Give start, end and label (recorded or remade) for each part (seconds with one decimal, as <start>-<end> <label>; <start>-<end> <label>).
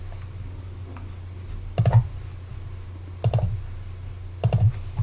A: 0.0-5.0 recorded